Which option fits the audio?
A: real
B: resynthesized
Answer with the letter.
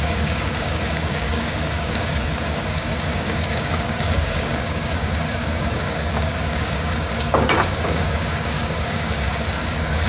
B